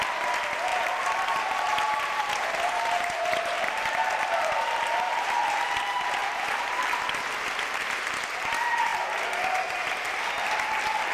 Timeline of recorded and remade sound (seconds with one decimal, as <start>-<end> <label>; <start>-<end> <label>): 0.0-0.7 recorded; 0.7-5.8 remade; 5.8-6.2 recorded; 6.2-6.9 remade; 6.9-11.1 recorded